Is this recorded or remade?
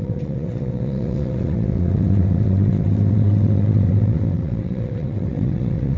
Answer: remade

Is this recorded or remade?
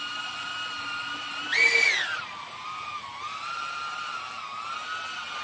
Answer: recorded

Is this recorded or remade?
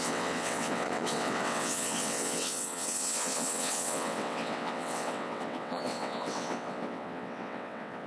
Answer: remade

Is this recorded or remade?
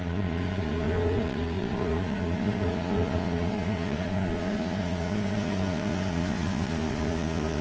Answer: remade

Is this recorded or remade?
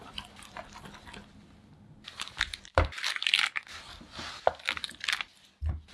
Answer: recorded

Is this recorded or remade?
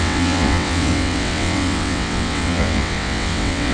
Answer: remade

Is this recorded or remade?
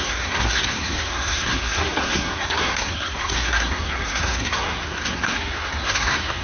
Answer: remade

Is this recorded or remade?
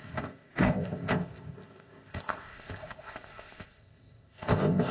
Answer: remade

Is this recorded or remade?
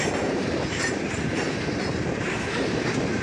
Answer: remade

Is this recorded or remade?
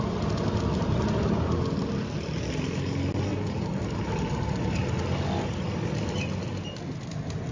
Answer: recorded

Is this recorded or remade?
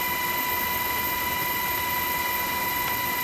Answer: recorded